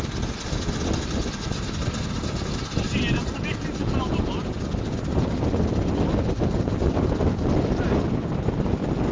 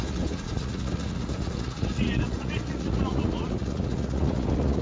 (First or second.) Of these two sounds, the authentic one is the first